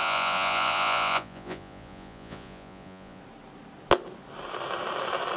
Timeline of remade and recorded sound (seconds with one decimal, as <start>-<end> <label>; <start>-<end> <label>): 0.0-3.2 remade; 3.2-5.4 recorded